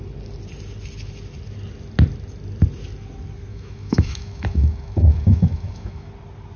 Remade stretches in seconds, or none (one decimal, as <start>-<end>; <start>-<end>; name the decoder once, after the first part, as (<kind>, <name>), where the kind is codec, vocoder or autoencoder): 3.5-6.1 (autoencoder, DAC-VAE)